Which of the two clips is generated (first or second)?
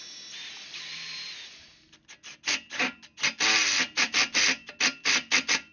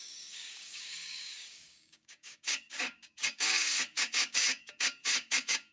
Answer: second